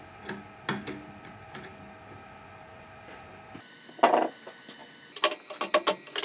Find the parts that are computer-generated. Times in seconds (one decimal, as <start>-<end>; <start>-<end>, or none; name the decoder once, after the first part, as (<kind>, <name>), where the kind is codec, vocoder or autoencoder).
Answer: 1.7-3.4 (vocoder, BigVGAN v2)